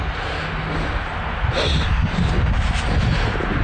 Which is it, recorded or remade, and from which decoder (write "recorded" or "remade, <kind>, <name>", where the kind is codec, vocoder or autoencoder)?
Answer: recorded